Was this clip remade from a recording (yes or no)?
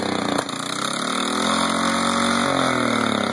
no